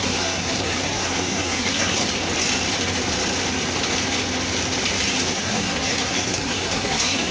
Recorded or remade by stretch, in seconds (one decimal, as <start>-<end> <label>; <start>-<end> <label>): 0.0-2.0 remade; 2.0-5.3 recorded; 5.3-7.3 remade